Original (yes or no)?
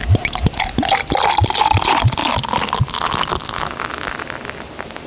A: yes